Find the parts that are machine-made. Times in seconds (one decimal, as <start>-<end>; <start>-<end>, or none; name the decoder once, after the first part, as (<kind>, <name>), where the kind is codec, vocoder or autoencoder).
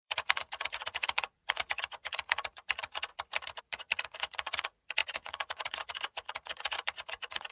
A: 0.0-3.1 (vocoder, Vocos); 3.6-7.5